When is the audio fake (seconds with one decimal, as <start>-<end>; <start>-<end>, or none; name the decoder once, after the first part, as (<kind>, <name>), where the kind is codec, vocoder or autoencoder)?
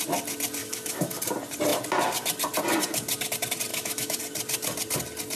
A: 0.6-1.2 (autoencoder, DAC-VAE); 3.7-4.2